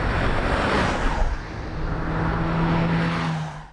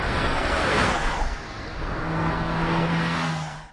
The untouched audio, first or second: first